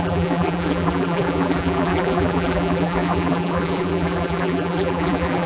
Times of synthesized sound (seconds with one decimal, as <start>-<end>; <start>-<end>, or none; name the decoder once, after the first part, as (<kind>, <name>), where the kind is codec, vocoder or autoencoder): 0.0-5.5 (vocoder, BigVGAN v2)